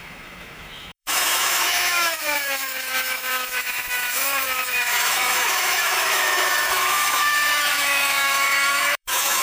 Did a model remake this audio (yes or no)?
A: yes